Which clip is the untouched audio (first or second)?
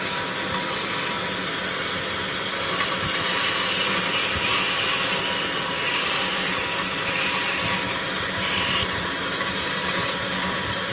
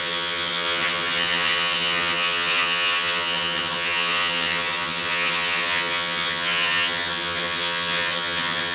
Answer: first